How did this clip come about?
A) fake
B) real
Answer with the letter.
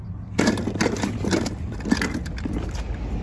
B